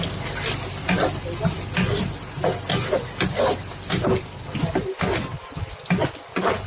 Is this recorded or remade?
recorded